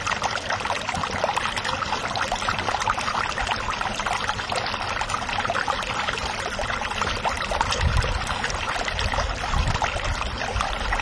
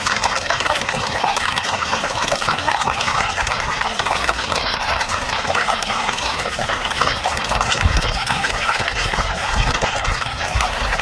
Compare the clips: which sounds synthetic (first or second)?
second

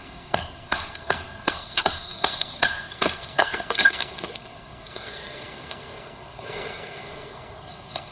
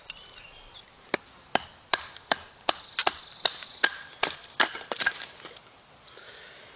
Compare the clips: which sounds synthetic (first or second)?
first